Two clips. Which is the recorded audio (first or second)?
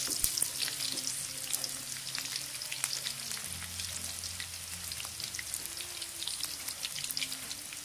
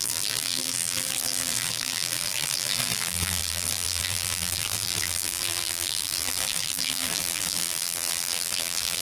first